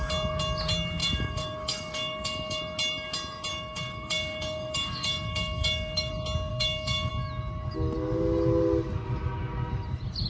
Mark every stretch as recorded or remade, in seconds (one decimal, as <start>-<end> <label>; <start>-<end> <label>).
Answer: 0.0-1.0 recorded; 1.0-2.6 remade; 2.6-3.5 recorded; 3.5-6.1 remade; 6.1-6.5 recorded; 6.5-7.1 remade; 7.1-10.3 recorded